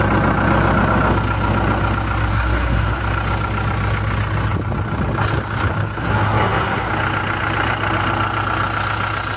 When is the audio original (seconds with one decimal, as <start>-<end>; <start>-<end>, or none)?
0.0-2.3; 3.0-6.0; 6.9-9.4